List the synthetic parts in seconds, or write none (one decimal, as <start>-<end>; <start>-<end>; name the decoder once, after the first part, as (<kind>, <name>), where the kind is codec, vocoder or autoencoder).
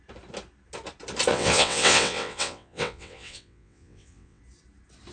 1.3-4.4 (vocoder, WaveNeXt)